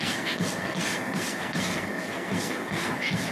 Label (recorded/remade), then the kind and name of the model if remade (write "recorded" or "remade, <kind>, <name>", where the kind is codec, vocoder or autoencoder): remade, codec, SNAC